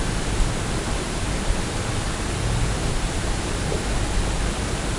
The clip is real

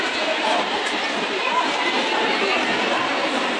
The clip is real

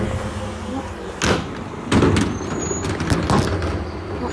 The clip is real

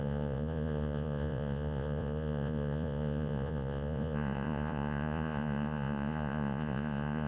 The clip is fake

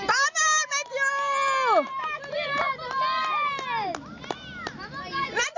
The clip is real